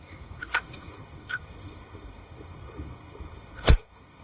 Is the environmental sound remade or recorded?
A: remade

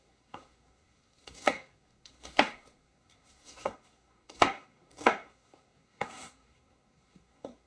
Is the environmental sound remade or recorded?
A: remade